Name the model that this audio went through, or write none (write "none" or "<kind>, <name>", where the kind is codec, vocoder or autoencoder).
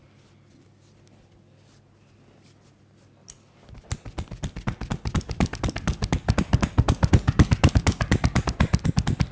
none